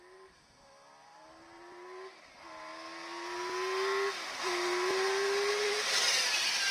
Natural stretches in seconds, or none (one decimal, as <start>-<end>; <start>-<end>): 0.0-6.7